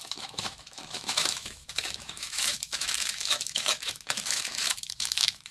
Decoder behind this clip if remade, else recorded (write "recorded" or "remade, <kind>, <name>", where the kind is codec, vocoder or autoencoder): remade, autoencoder, DAC-VAE